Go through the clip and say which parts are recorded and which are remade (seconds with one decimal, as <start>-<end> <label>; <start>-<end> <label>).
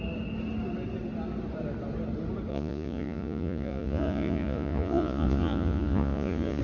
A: 0.0-2.5 recorded; 2.5-6.6 remade